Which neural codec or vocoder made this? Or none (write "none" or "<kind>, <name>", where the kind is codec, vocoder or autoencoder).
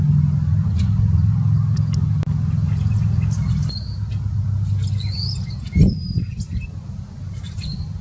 none